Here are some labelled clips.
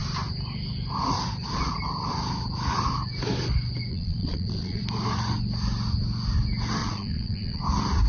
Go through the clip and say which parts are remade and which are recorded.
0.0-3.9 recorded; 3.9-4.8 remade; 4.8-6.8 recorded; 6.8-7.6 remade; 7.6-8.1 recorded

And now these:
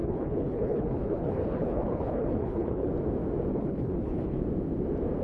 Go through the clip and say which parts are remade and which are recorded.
0.0-2.9 remade; 2.9-3.5 recorded; 3.5-4.4 remade; 4.4-5.2 recorded